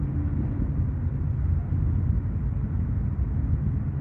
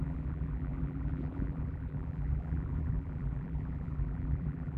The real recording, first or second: first